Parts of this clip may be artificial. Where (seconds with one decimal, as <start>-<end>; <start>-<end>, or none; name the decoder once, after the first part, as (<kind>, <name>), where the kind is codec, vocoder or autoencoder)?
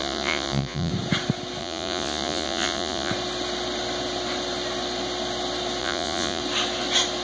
0.0-0.9 (vocoder, Vocos); 1.6-3.1; 5.8-6.4